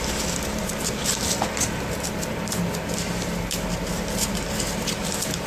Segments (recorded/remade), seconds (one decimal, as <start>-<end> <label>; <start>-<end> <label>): 0.0-1.0 recorded; 1.0-4.3 remade; 4.3-5.5 recorded

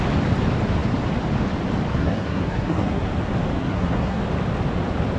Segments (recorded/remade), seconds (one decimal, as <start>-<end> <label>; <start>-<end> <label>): 0.0-1.9 recorded; 1.9-3.1 remade; 3.1-3.6 recorded; 3.6-4.2 remade; 4.2-5.2 recorded

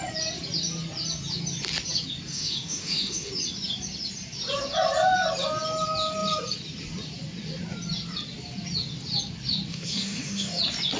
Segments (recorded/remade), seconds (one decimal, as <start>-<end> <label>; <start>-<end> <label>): 0.0-2.3 recorded; 2.3-3.3 remade; 3.3-9.7 recorded; 9.7-10.6 remade; 10.6-11.0 recorded

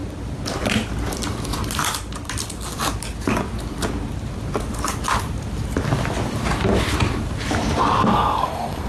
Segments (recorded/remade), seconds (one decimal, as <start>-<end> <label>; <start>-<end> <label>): 0.0-8.1 recorded; 8.1-8.9 remade

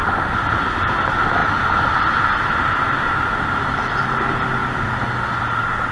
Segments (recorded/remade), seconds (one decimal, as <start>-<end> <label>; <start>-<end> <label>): 0.0-5.9 recorded

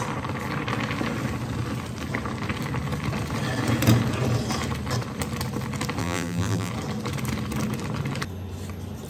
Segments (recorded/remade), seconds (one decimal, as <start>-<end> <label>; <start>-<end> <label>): 0.0-6.0 recorded; 6.0-6.7 remade; 6.7-9.1 recorded